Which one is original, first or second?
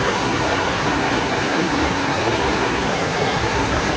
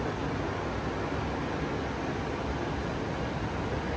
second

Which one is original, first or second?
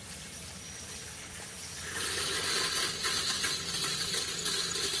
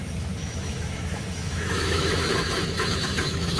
first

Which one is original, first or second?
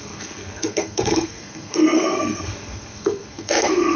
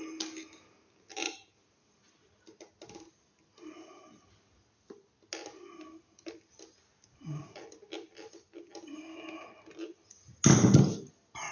second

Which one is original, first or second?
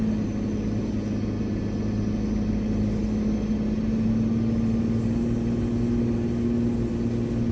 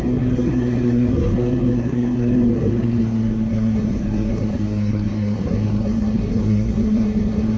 first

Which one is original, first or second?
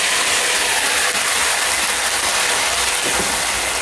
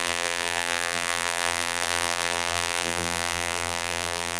first